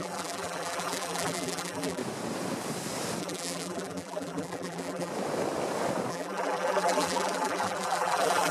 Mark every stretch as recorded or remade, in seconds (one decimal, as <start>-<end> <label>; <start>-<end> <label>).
0.0-2.0 remade; 2.0-3.2 recorded; 3.2-5.1 remade; 5.1-6.1 recorded; 6.1-8.5 remade